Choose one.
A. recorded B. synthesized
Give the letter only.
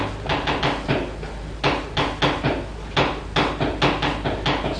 A